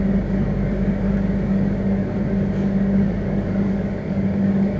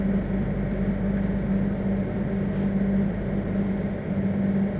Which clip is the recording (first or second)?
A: second